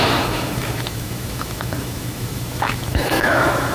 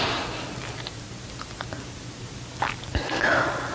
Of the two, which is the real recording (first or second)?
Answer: second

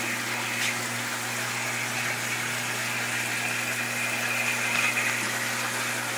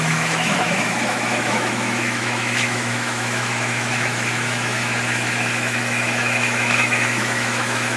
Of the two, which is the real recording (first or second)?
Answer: first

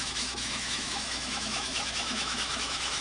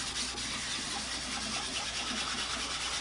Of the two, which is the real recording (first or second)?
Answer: second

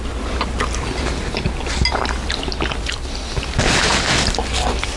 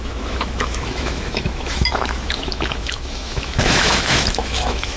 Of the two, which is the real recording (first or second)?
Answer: first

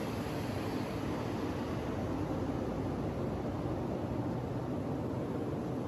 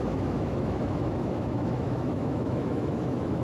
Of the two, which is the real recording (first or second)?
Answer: first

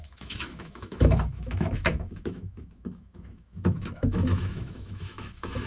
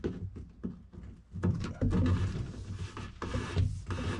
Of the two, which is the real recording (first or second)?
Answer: second